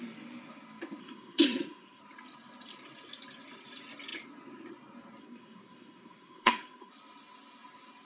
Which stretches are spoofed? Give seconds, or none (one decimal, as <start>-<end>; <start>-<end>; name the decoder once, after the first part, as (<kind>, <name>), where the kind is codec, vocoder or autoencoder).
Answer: 1.0-2.0 (codec, SNAC); 5.2-6.9